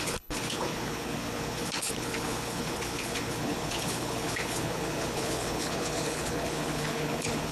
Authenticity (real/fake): fake